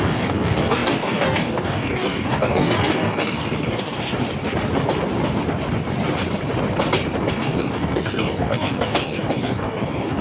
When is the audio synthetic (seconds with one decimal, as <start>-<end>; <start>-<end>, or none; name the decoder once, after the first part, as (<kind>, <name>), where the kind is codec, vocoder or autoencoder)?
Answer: 0.0-4.1 (codec, DAC); 7.3-10.2